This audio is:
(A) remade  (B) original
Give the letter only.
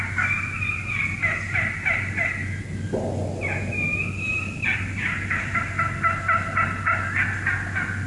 B